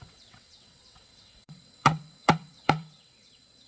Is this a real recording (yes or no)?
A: no